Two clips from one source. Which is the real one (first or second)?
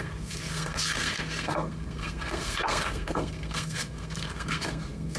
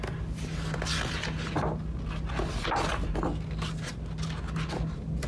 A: second